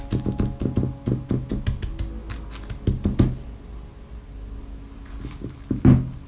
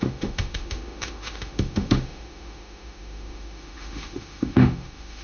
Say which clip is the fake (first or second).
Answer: second